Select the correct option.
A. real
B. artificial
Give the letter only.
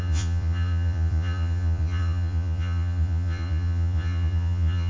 B